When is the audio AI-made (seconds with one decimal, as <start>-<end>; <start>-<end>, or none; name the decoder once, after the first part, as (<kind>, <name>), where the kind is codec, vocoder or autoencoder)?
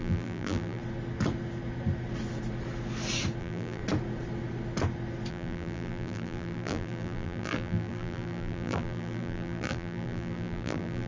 0.0-0.8 (vocoder, BigVGAN v2); 3.4-3.8; 5.3-11.1